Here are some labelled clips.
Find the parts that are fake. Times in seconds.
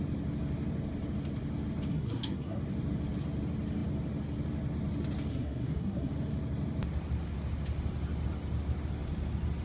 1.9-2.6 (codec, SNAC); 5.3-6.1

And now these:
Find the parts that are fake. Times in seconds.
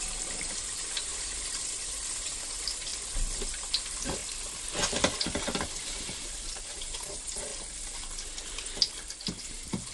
0.0-2.9 (vocoder, BigVGAN v2); 3.5-4.2; 5.2-7.5; 9.4-9.9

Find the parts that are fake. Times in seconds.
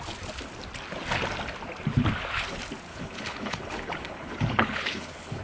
2.9-5.4 (codec, HILCodec)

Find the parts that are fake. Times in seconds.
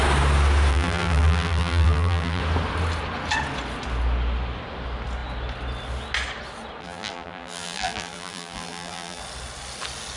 0.7-2.4 (vocoder, BigVGAN v2); 6.8-9.2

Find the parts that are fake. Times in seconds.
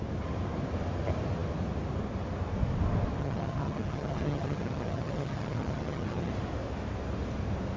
3.2-6.3 (vocoder, HiFi-GAN)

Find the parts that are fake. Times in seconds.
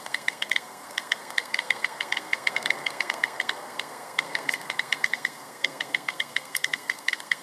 0.0-7.4 (codec, SNAC)